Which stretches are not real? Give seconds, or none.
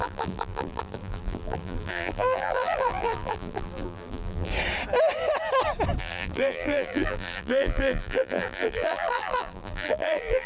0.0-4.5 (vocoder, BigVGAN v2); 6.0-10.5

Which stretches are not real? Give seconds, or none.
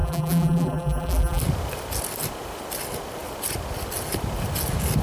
0.0-1.4 (vocoder, BigVGAN v2)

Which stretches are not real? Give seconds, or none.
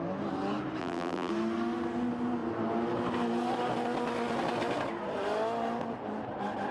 0.8-1.3 (vocoder, BigVGAN v2)